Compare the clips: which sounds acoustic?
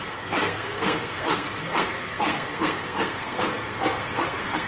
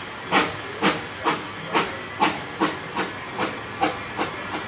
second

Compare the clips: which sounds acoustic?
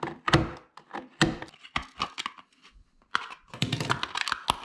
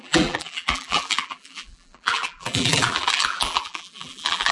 first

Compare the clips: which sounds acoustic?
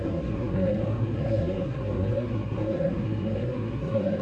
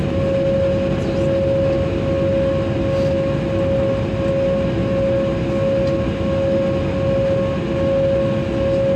second